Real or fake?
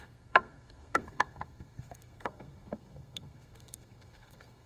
fake